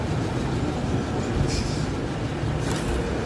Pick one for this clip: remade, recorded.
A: recorded